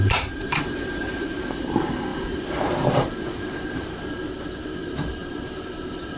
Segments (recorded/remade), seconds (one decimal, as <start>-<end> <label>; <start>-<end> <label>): 0.0-6.2 remade